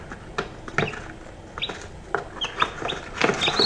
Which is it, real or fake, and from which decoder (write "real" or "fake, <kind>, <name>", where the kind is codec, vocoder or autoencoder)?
real